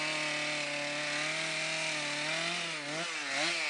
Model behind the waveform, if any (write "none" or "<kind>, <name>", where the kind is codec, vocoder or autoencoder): none